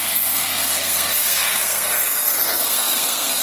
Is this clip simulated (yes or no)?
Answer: yes